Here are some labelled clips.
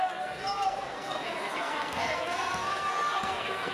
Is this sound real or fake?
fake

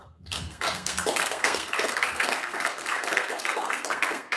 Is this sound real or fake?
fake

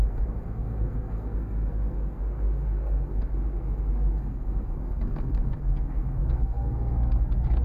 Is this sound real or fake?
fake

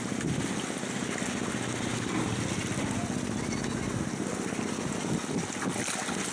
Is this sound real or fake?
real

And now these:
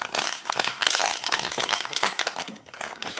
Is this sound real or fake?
fake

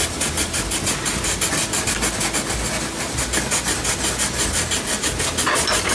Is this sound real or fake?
real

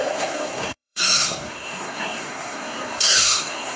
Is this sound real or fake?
fake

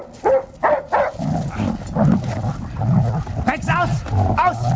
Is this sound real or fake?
real